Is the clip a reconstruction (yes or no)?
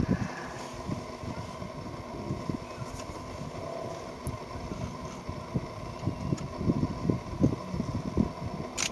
no